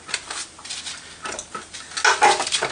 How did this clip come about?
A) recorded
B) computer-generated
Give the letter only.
A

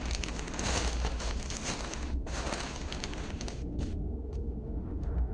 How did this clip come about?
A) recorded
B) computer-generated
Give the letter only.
B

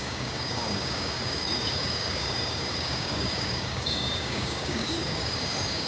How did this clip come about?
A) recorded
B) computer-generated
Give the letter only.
B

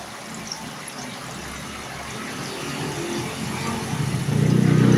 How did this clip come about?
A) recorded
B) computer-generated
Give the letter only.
A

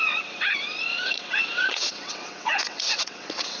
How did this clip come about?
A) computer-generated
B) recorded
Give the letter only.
A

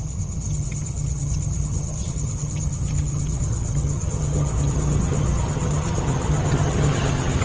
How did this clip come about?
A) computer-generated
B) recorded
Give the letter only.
A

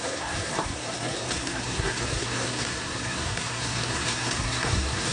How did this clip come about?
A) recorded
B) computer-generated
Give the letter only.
B